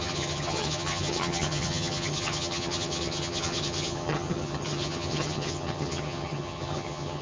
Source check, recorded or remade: remade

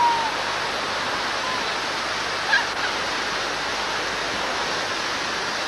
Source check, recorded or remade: recorded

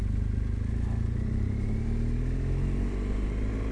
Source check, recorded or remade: recorded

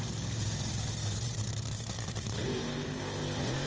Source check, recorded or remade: remade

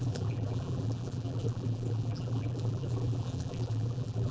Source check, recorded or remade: remade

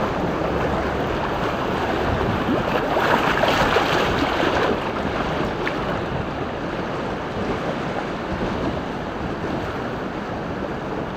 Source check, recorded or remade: recorded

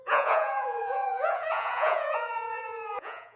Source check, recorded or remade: remade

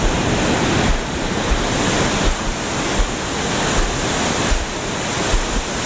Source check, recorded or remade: recorded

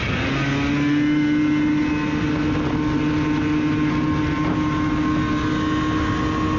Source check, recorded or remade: recorded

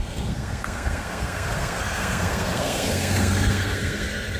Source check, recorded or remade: remade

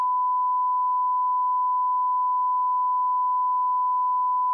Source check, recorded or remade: recorded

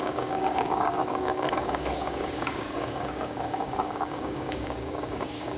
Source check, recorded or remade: remade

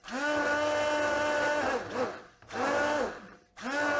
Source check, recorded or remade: recorded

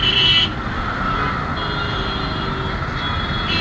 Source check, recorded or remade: recorded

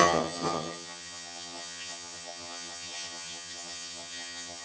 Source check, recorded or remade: remade